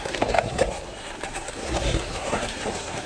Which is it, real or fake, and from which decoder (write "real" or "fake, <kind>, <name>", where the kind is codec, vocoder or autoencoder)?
fake, codec, SNAC